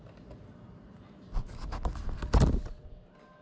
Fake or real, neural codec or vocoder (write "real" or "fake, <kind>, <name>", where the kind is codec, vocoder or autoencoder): real